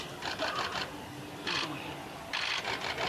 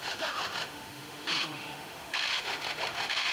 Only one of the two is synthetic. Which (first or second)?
second